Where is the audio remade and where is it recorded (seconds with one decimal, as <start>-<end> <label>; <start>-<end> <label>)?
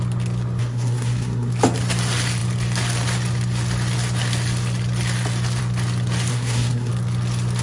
0.0-0.6 recorded; 0.6-1.5 remade; 1.5-6.3 recorded; 6.3-6.9 remade; 6.9-7.6 recorded